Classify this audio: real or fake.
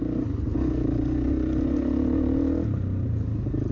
real